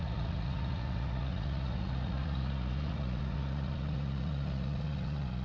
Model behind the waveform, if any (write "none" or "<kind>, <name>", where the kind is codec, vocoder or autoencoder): vocoder, Vocos